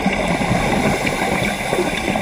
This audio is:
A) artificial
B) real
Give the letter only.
B